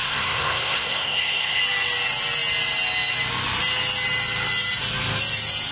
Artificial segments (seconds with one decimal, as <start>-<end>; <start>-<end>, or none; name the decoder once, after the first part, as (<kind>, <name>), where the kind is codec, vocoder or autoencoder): 0.0-1.6 (codec, SNAC)